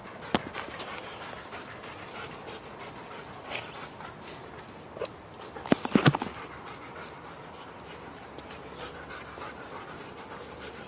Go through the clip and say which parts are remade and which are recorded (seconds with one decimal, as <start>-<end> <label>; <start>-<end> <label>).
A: 0.0-10.9 recorded